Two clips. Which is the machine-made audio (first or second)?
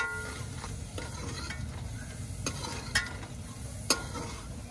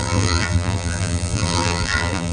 second